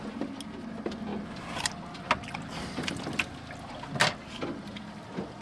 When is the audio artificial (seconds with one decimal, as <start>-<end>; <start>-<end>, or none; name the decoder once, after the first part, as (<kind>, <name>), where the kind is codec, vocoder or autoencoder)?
none